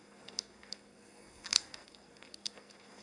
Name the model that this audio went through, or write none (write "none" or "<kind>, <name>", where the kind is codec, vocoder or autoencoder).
codec, SNAC